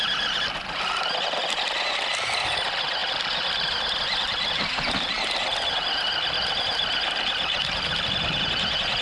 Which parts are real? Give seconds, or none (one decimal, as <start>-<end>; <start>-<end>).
0.0-9.0